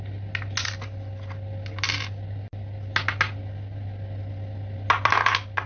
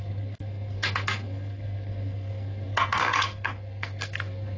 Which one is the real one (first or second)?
first